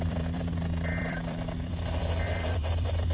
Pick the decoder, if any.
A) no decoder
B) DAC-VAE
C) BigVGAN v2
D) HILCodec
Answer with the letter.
C